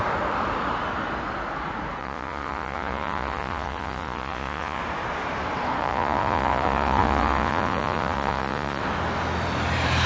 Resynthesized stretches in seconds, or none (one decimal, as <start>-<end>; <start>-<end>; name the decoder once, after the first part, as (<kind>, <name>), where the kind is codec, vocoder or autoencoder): 2.0-4.8 (vocoder, Vocos); 5.8-8.8